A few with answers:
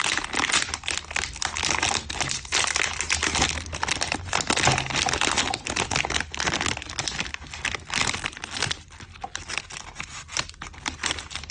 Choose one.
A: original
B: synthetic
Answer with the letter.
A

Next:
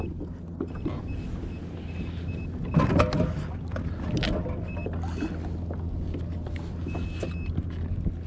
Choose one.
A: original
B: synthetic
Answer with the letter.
A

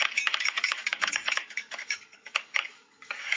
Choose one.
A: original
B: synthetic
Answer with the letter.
B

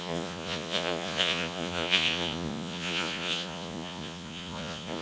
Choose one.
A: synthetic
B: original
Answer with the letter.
A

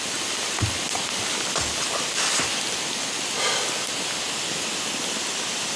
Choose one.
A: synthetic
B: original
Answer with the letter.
B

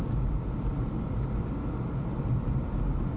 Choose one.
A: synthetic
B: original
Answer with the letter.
B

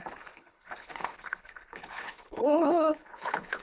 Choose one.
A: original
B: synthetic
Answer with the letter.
B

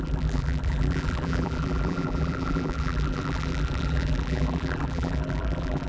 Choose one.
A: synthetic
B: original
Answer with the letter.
A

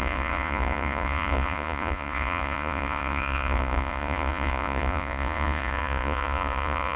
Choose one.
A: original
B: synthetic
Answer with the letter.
B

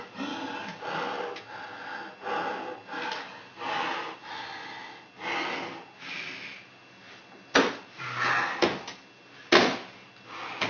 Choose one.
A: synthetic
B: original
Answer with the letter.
B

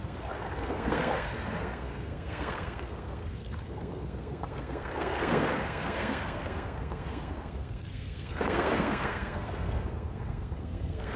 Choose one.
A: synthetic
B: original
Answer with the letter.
A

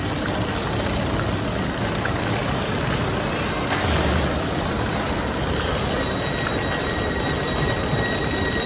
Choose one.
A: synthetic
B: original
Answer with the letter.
B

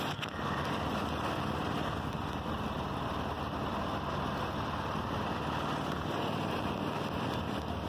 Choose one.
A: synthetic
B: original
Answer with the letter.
B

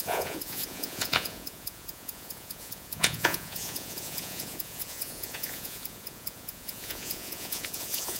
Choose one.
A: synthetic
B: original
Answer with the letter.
A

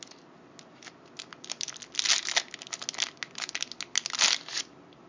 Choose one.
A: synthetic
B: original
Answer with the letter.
B